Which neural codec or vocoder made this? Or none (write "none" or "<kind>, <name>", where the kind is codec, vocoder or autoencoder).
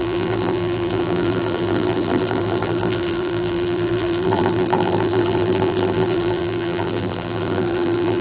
vocoder, BigVGAN v2